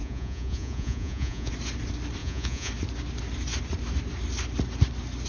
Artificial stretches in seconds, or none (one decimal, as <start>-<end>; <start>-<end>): 0.0-1.5; 2.2-2.7